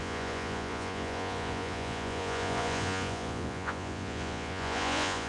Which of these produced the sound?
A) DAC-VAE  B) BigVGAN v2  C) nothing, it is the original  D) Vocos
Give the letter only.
D